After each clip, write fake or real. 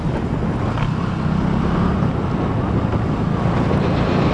real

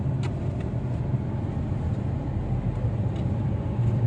real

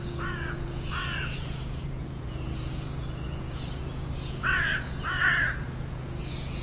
fake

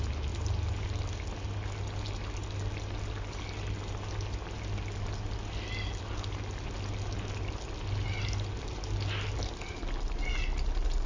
real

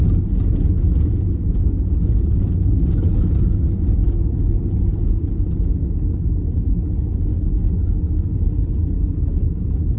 real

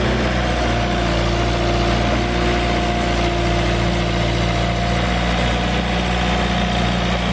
real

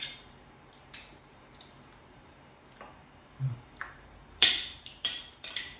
fake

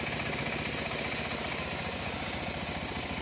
real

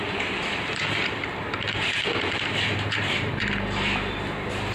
fake